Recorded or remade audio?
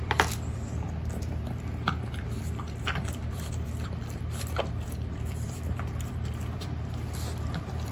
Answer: remade